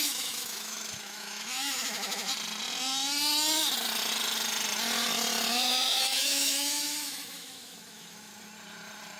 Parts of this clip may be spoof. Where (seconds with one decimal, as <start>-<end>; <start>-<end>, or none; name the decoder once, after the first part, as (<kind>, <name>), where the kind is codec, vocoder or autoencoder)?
0.0-2.3 (autoencoder, DAC-VAE); 5.5-8.3